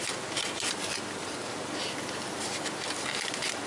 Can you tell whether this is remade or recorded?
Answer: recorded